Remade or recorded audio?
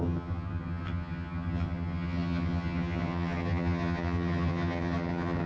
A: remade